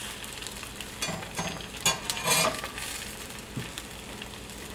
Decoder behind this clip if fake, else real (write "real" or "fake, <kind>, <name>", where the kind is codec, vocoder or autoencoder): real